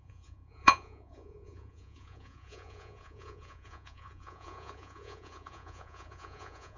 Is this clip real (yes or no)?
no